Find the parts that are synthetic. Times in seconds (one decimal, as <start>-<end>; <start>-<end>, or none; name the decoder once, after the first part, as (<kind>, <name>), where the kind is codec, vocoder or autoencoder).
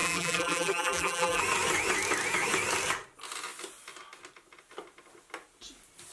0.0-1.4 (vocoder, BigVGAN v2)